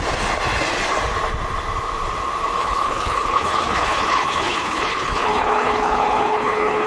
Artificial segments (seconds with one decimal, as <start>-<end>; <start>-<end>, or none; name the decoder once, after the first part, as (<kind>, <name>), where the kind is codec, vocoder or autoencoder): 2.6-6.9 (codec, HILCodec)